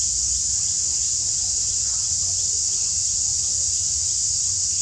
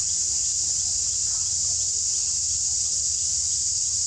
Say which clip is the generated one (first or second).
first